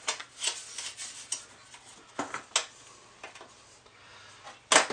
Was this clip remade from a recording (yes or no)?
no